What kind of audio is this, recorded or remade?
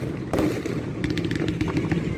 recorded